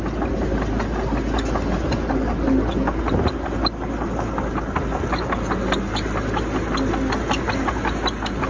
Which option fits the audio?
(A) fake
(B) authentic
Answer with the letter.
B